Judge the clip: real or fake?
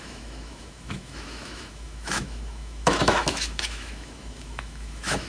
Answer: fake